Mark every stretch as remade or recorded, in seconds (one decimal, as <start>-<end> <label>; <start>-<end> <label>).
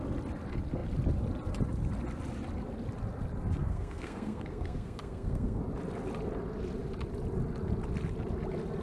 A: 0.0-3.6 recorded; 3.6-5.6 remade; 5.6-8.8 recorded